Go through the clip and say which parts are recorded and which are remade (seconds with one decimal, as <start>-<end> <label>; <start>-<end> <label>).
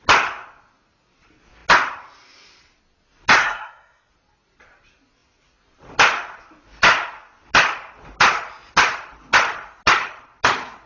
0.0-3.4 recorded; 3.4-4.1 remade; 4.1-10.9 recorded